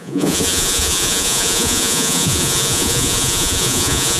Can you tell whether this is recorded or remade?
remade